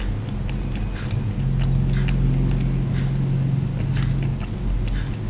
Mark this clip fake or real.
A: real